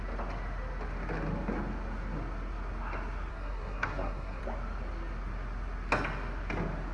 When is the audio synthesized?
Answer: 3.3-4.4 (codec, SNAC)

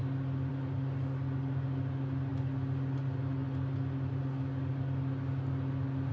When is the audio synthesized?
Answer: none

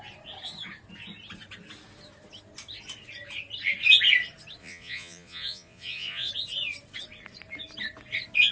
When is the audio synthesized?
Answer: 4.6-6.3 (vocoder, Vocos)